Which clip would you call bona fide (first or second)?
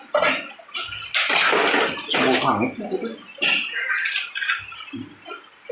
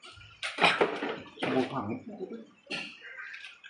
first